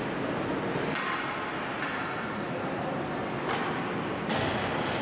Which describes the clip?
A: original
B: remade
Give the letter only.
A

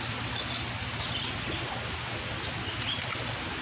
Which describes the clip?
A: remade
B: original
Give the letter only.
B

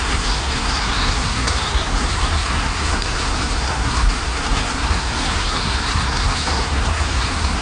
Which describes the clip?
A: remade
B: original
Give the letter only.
A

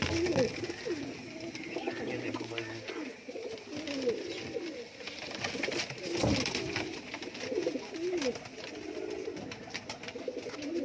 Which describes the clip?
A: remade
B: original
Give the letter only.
B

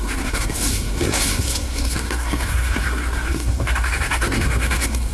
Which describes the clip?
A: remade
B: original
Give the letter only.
A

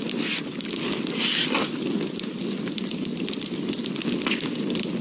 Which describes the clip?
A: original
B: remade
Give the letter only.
A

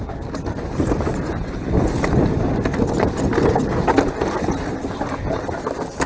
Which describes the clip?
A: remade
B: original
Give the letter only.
B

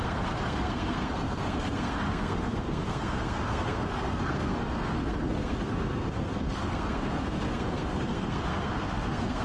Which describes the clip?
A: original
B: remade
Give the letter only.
B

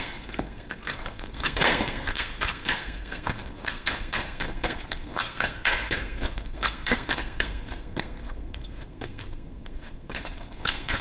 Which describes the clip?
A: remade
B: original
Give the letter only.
A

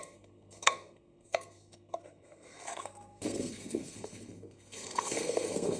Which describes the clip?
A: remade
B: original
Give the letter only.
A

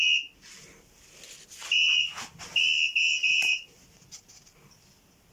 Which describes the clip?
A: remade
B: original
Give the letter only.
B